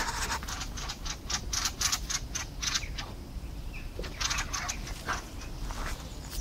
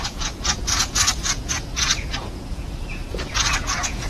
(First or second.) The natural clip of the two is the first